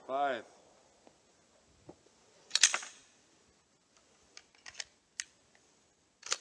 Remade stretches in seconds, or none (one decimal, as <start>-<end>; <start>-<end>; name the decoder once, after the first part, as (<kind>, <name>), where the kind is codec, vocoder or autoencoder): none